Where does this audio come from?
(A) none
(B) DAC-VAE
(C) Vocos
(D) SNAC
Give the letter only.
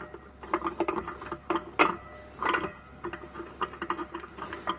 A